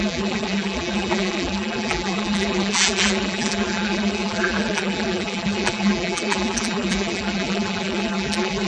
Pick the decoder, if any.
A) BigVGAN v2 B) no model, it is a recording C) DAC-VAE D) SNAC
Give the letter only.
A